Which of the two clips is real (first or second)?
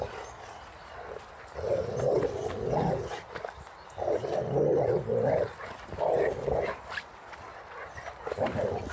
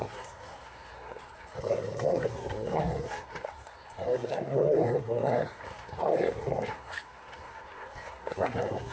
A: first